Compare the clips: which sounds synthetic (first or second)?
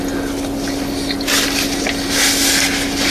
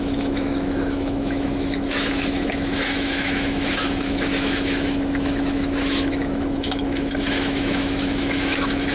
second